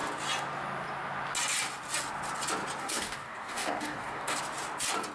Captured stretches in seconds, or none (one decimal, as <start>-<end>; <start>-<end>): 0.0-2.8; 4.4-5.1